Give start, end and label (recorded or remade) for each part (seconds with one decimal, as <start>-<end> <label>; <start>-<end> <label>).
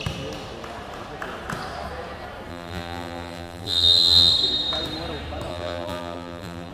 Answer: 0.0-2.5 recorded; 2.5-4.3 remade; 4.3-5.5 recorded; 5.5-6.7 remade